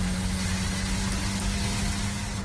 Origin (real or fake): real